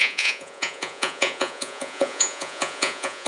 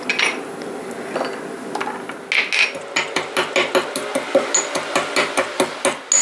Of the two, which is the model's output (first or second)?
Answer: first